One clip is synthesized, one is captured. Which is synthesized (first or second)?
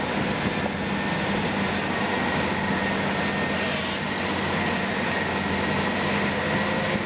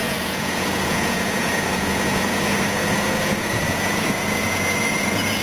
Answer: second